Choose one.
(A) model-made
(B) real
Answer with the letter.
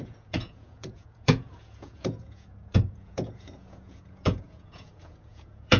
A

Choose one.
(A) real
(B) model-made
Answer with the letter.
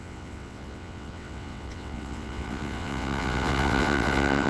B